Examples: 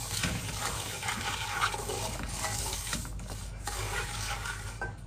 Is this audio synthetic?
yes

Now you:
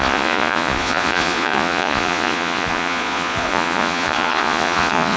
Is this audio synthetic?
yes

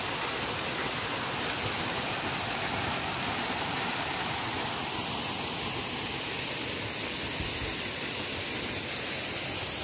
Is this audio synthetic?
no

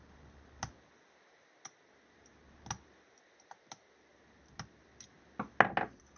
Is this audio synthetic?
no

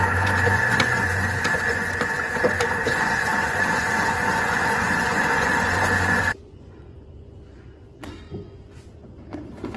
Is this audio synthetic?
yes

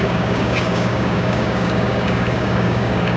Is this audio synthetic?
yes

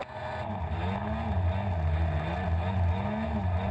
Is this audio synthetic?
no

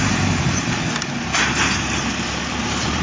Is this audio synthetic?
no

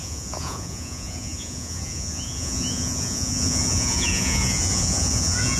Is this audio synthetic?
yes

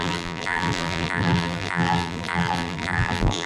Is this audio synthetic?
yes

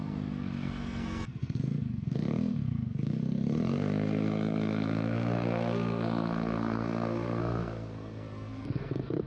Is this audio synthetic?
yes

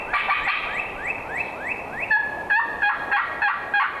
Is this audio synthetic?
no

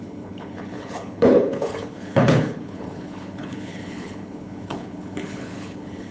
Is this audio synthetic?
yes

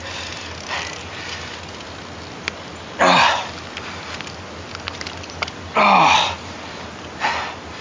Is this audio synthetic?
no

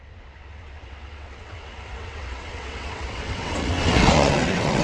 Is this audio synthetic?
yes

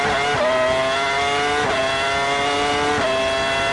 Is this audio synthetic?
no